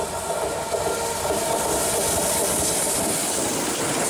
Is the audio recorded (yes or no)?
yes